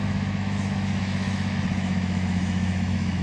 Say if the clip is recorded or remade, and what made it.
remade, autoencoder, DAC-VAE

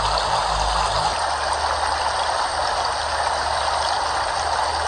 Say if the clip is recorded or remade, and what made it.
recorded